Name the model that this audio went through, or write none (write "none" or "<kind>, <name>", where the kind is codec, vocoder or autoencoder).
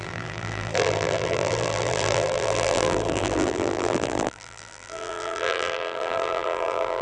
vocoder, BigVGAN v2